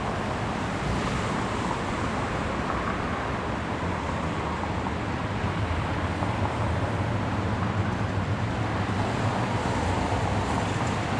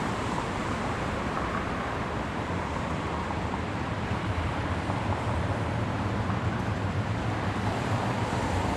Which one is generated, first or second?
second